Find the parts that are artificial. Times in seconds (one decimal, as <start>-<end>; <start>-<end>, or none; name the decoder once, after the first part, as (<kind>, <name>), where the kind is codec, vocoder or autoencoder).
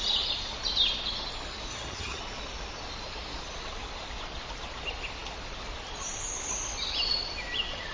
1.7-2.2 (vocoder, HiFi-GAN)